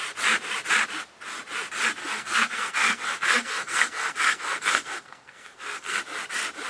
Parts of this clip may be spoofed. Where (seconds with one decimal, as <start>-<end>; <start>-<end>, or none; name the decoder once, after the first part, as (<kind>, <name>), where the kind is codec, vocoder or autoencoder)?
2.0-6.0 (codec, SNAC)